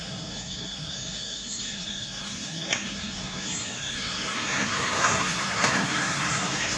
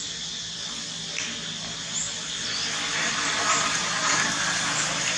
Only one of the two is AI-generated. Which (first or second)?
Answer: first